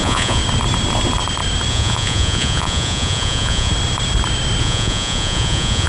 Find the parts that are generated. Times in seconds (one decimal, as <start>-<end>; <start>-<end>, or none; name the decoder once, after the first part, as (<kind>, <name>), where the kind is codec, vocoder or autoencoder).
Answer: 0.0-0.4 (vocoder, Vocos); 1.7-3.7; 4.6-5.9